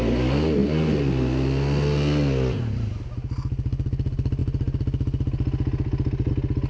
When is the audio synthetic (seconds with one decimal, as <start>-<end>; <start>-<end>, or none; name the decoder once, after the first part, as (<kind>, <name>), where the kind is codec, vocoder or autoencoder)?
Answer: none